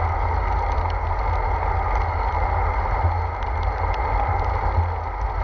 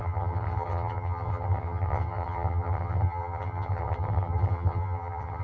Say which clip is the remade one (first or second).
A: second